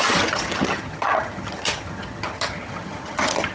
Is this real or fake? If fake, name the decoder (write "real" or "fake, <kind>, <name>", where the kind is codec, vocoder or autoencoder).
fake, vocoder, HiFi-GAN